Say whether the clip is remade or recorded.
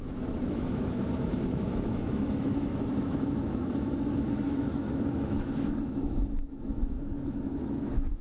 remade